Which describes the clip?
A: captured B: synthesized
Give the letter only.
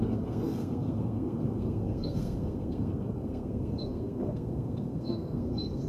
B